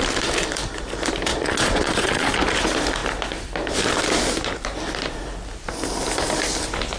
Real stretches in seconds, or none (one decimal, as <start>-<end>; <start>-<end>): 0.0-1.3; 2.3-7.0